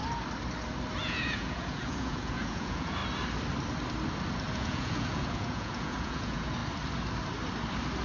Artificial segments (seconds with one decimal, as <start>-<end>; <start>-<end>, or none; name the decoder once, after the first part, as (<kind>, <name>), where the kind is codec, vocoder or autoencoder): 1.0-3.0 (vocoder, Vocos); 4.5-6.6